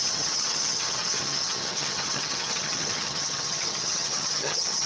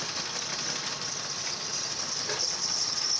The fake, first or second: first